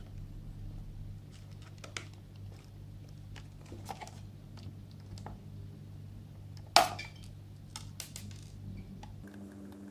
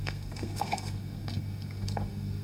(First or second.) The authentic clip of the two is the first